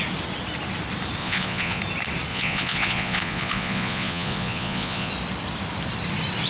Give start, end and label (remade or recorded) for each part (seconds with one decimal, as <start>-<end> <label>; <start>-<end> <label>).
0.0-1.2 recorded; 1.2-1.8 remade; 1.8-2.3 recorded; 2.3-5.1 remade; 5.1-6.5 recorded